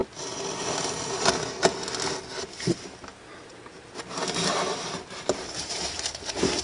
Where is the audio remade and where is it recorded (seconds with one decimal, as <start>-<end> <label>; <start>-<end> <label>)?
0.0-3.1 recorded; 3.1-6.6 remade